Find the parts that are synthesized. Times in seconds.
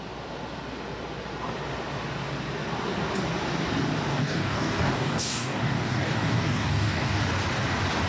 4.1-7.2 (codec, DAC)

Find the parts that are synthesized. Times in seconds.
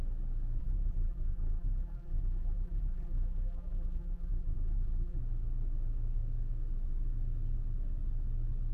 0.6-5.2 (vocoder, BigVGAN v2)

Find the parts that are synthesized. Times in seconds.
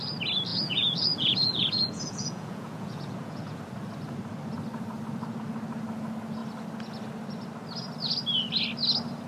0.5-3.6 (vocoder, Vocos)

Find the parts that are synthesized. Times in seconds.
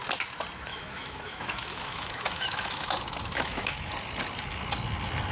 0.7-3.9 (autoencoder, DAC-VAE)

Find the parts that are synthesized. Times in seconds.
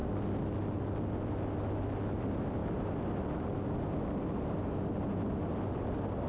none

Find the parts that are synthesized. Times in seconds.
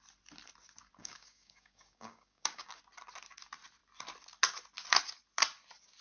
1.0-2.8 (codec, DAC)